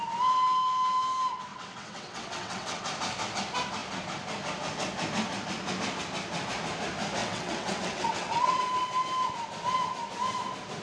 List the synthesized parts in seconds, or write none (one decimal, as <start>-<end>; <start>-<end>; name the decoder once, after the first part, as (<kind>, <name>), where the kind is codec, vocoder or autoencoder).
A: 1.5-2.8 (vocoder, WaveNeXt); 7.2-8.6